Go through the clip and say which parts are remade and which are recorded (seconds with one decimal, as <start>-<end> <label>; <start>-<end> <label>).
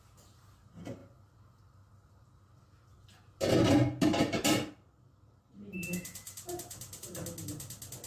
0.0-1.0 remade; 1.0-4.2 recorded; 4.2-7.2 remade; 7.2-8.1 recorded